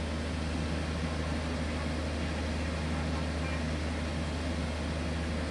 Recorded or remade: recorded